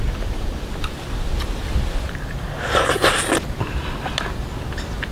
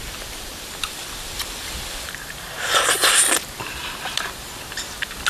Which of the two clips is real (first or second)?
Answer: first